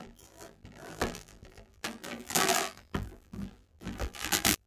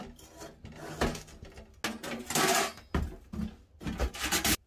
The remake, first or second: first